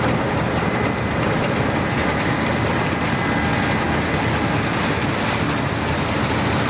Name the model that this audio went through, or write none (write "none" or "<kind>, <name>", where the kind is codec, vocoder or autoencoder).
none